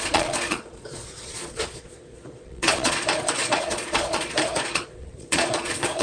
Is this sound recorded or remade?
remade